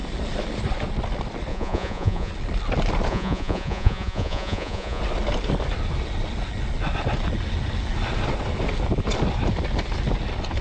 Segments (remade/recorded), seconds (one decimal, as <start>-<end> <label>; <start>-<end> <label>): 0.0-1.5 recorded; 1.5-2.3 remade; 2.3-3.1 recorded; 3.1-5.0 remade; 5.0-10.6 recorded